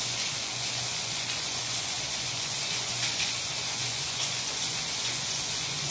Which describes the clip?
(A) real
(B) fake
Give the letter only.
B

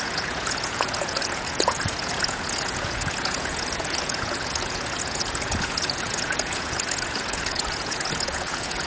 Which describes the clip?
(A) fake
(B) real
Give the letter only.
A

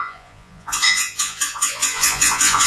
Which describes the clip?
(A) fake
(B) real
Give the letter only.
A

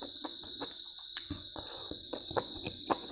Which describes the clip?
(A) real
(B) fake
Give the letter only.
B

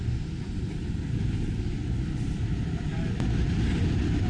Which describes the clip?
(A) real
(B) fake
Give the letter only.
A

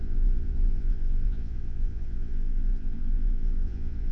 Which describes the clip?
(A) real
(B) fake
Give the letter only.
B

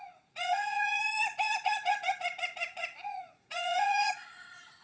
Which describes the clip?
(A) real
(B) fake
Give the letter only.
B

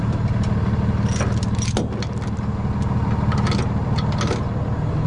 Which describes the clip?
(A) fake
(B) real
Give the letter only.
B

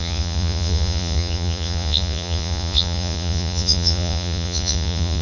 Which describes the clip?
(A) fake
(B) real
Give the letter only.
A